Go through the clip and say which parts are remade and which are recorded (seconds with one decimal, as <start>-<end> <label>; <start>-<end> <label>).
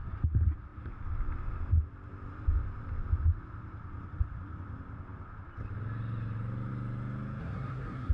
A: 0.0-7.4 recorded; 7.4-8.1 remade